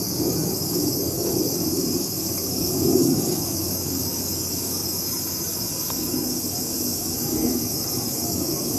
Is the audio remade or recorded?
remade